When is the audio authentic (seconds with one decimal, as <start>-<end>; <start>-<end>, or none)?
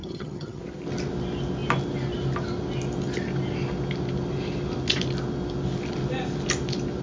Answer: 0.6-7.0